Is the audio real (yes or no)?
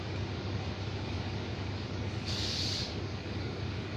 no